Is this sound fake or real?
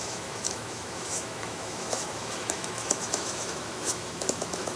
fake